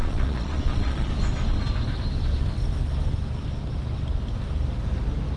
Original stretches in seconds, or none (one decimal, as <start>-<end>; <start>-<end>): 1.1-5.4